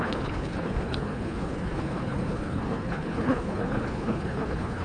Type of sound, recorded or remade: remade